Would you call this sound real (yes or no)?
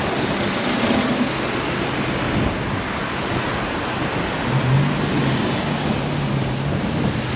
yes